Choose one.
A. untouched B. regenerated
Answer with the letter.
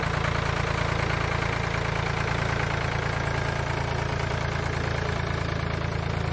A